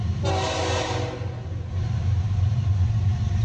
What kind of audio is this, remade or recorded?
remade